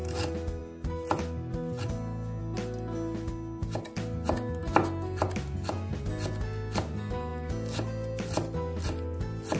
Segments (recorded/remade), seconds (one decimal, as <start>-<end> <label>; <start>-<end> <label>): 0.0-9.6 recorded